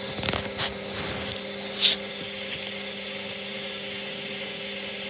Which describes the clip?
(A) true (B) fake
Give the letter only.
A